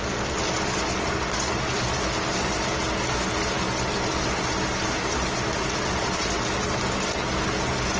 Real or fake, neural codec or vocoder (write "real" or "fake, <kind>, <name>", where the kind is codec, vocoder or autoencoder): real